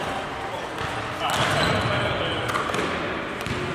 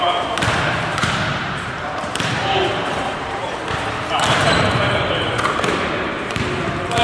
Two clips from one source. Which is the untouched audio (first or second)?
first